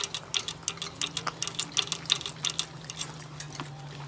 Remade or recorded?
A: recorded